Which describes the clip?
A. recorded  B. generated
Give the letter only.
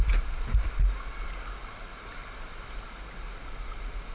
A